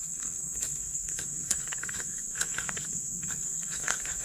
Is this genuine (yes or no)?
no